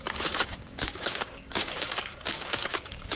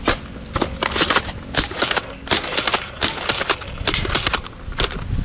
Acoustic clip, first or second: second